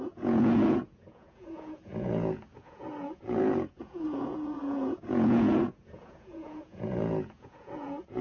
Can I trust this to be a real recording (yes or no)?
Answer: no